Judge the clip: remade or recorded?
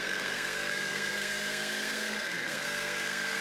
remade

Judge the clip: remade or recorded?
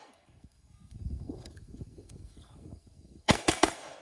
remade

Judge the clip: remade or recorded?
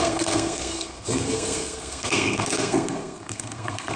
remade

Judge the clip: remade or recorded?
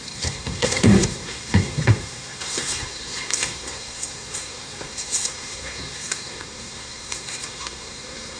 remade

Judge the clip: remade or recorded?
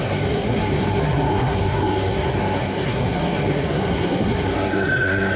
remade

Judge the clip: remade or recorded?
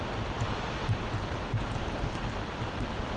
recorded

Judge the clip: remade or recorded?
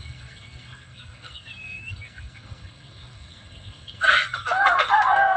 remade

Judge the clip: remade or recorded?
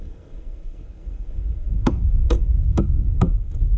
remade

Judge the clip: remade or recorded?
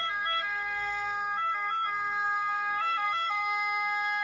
remade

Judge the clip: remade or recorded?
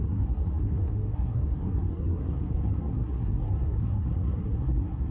remade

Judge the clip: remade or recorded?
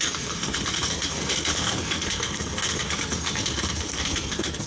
remade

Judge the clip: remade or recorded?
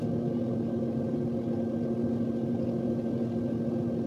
recorded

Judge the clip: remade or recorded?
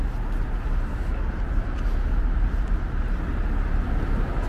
recorded